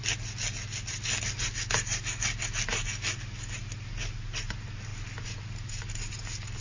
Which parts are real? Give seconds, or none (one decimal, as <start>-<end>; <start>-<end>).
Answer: 0.0-6.6